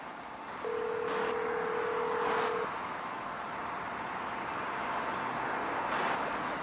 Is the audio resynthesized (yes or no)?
no